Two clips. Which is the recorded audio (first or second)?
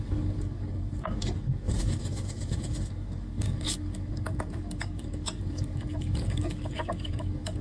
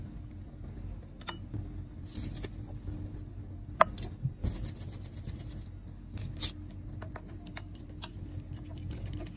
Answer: second